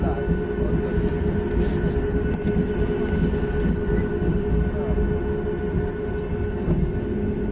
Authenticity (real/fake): real